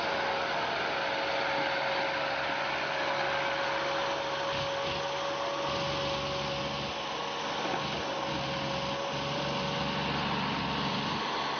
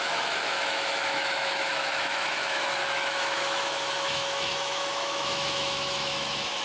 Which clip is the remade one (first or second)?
second